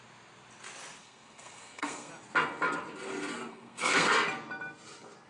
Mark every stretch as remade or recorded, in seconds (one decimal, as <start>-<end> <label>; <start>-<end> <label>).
0.0-1.0 recorded; 1.0-2.1 remade; 2.1-3.5 recorded; 3.5-4.1 remade; 4.1-5.3 recorded